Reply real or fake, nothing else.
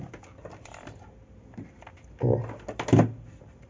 real